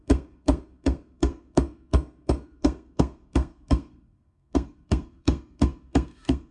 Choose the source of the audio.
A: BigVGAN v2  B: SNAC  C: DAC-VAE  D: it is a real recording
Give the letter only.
B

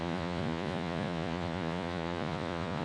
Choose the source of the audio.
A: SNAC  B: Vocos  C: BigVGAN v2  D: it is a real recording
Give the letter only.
B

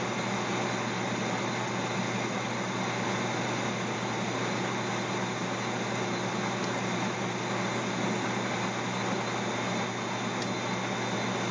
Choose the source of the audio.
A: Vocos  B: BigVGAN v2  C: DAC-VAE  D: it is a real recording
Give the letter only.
D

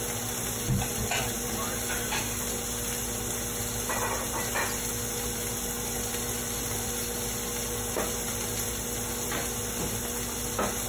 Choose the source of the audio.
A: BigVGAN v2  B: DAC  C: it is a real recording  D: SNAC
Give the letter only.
C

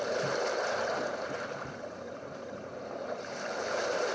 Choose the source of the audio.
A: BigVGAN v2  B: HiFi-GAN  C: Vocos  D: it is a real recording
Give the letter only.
A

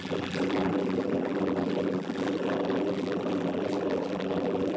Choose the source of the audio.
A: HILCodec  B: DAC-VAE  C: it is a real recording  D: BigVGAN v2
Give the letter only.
D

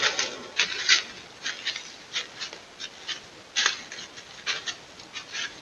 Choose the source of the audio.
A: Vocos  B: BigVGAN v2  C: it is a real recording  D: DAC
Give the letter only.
C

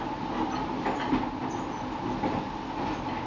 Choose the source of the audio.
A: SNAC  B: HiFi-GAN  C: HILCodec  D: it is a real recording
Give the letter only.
D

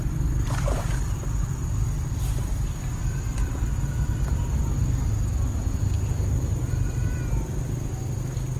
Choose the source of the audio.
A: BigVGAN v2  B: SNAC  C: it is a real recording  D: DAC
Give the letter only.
C